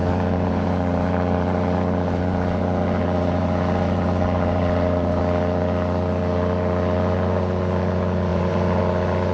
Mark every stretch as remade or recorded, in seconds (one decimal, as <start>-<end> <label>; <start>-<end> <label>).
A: 0.0-5.2 remade; 5.2-8.3 recorded; 8.3-8.8 remade; 8.8-9.3 recorded